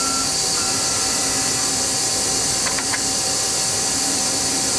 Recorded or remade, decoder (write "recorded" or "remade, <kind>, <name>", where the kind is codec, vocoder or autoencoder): remade, vocoder, BigVGAN v2